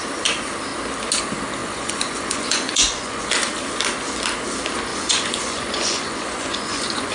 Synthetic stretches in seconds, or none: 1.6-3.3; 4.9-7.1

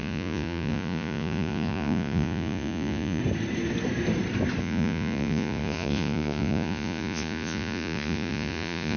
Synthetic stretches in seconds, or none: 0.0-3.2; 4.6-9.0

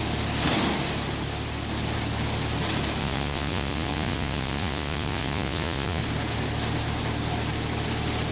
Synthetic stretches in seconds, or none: 3.0-6.0